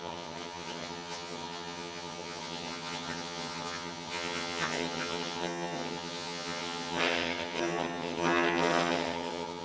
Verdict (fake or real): fake